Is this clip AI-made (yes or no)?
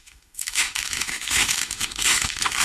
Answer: yes